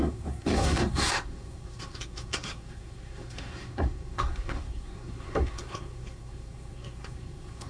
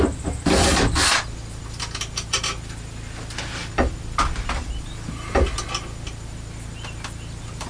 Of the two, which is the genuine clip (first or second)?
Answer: second